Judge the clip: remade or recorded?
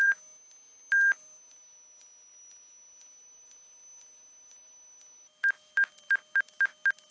recorded